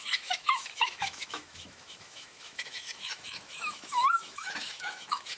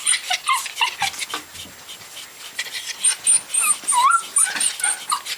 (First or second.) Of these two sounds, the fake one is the first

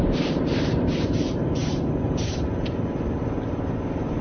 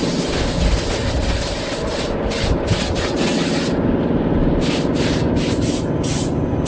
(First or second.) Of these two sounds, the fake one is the first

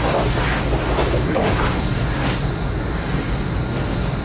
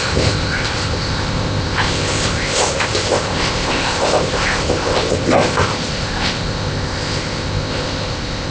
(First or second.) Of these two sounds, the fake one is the second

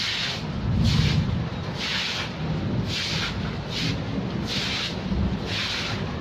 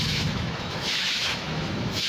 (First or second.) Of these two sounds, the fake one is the second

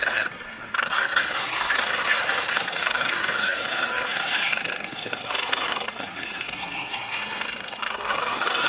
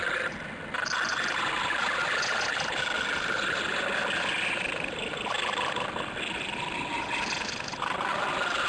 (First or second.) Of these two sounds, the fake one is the first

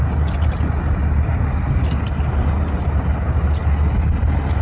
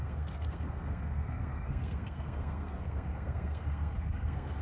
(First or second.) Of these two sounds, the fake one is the second